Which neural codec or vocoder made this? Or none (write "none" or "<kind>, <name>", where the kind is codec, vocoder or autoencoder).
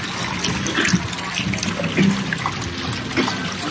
none